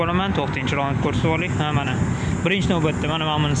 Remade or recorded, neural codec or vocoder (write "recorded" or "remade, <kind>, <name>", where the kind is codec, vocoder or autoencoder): recorded